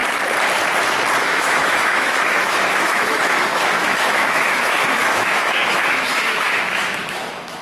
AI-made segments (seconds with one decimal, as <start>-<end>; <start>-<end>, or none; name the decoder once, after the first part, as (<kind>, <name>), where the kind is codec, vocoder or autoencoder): 1.2-7.6 (autoencoder, DAC-VAE)